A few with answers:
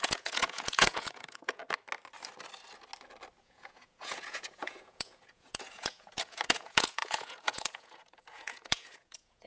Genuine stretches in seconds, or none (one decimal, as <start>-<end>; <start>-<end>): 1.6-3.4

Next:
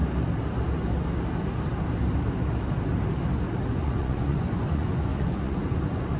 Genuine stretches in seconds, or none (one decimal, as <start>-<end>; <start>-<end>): 0.0-3.7

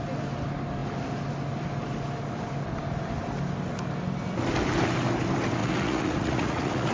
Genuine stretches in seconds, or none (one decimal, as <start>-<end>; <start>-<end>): 0.0-5.6